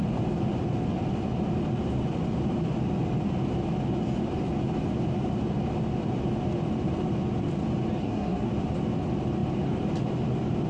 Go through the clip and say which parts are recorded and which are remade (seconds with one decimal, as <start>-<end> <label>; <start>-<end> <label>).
0.0-8.0 recorded; 8.0-8.5 remade; 8.5-10.7 recorded